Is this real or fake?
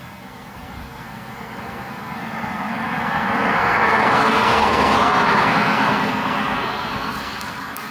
fake